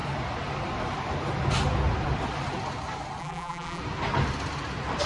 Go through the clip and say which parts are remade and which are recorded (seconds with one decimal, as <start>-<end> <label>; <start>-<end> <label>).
0.0-3.2 recorded; 3.2-3.8 remade; 3.8-5.1 recorded